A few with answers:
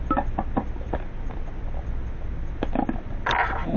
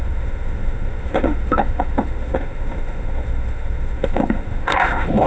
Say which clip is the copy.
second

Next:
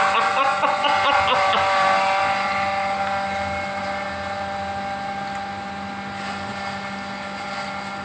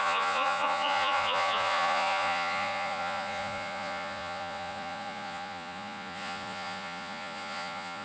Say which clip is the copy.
second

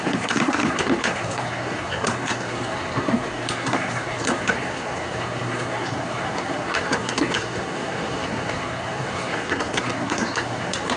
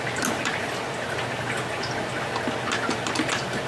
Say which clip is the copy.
first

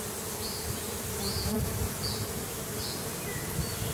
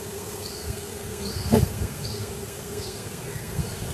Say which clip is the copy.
second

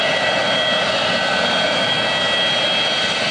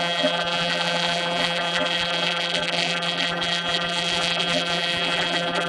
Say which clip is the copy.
second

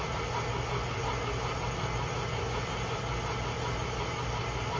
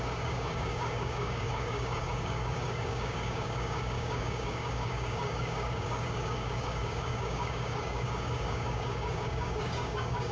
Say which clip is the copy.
second